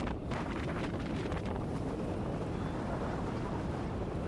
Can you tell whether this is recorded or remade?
remade